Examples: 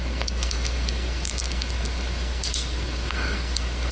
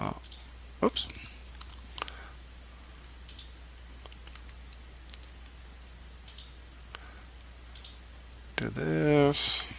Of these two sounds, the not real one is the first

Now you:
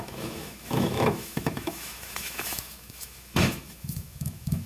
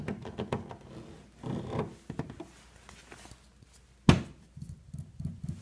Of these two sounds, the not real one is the first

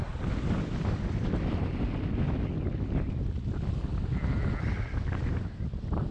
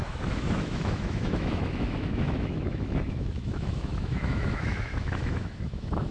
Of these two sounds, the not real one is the second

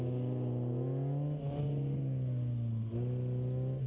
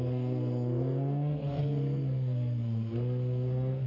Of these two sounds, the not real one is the second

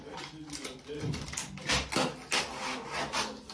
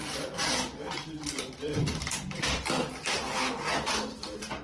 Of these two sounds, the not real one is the second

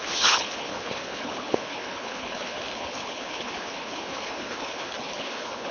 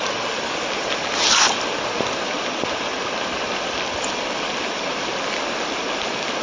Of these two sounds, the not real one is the first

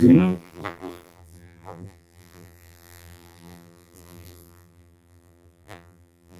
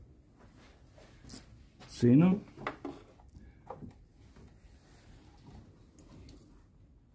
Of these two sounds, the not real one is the first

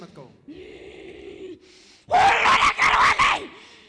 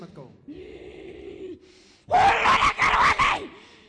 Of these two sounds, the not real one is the first